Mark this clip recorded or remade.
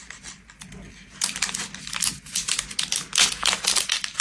recorded